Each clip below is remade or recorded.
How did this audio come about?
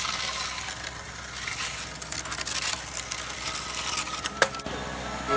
recorded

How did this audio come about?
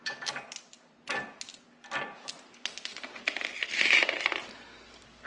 recorded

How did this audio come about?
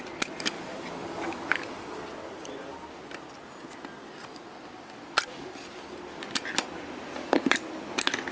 recorded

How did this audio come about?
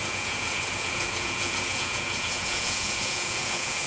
remade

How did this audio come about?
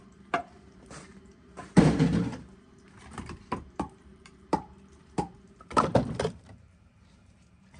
remade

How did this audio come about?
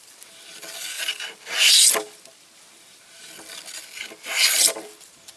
recorded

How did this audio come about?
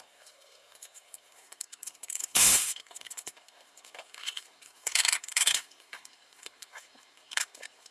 remade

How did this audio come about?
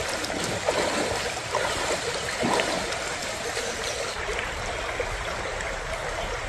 recorded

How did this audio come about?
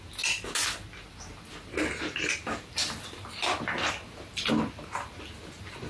recorded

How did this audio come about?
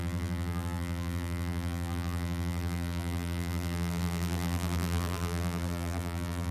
remade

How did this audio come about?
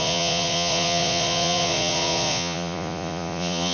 remade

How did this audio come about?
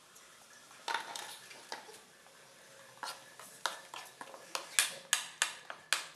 recorded